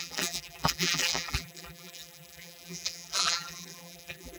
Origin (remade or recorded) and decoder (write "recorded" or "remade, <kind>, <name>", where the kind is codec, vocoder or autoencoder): remade, vocoder, BigVGAN v2